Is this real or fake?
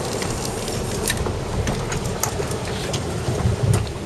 real